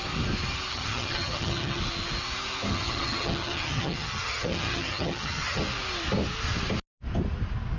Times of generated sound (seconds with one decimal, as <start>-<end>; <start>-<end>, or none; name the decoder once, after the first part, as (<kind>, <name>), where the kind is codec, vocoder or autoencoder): 0.7-1.8 (vocoder, HiFi-GAN); 2.7-5.6